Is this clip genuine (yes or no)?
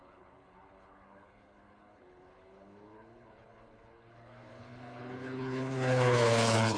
no